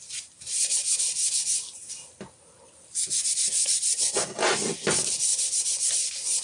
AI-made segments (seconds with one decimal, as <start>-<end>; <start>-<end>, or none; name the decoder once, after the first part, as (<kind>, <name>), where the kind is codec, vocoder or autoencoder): none